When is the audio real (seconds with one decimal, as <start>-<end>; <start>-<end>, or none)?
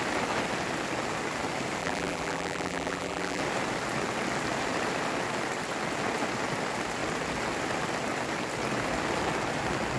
0.0-1.8; 3.4-10.0